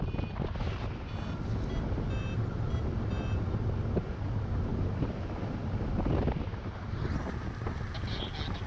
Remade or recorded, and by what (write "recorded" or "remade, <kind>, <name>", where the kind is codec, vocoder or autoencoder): recorded